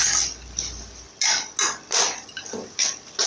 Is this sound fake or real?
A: real